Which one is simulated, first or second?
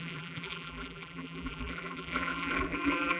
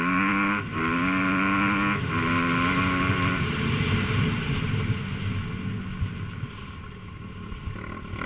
first